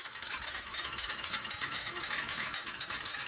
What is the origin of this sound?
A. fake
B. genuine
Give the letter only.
A